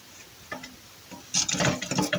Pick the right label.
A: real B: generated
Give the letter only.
A